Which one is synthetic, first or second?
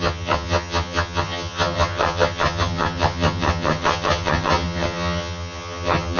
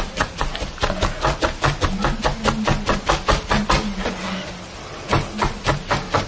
first